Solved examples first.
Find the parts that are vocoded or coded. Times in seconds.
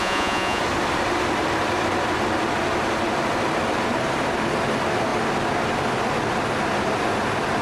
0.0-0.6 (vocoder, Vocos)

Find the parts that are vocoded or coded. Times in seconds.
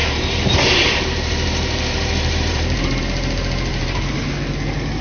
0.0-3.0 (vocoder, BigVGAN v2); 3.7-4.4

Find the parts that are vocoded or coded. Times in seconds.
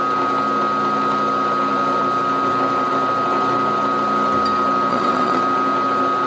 4.9-5.4 (vocoder, WaveNeXt)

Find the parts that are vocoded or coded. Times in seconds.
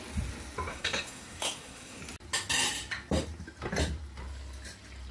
0.7-2.0 (codec, SNAC)